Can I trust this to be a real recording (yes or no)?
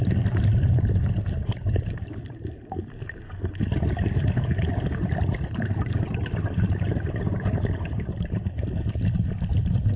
yes